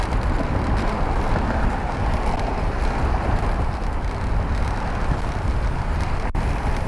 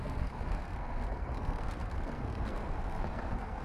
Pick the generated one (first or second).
second